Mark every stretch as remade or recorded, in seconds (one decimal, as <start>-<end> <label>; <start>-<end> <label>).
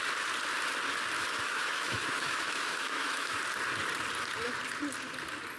0.0-1.2 recorded; 1.2-3.4 remade; 3.4-5.6 recorded